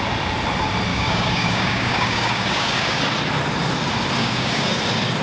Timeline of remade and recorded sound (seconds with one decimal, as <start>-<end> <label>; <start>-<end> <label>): 0.0-0.9 recorded; 0.9-3.0 remade; 3.0-4.2 recorded; 4.2-4.8 remade; 4.8-5.2 recorded